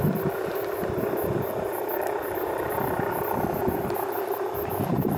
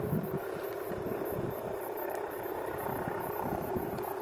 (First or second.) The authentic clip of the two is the first